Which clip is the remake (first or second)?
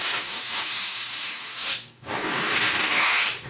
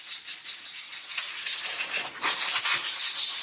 first